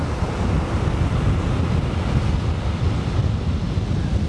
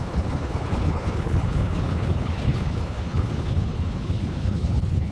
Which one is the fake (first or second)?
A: second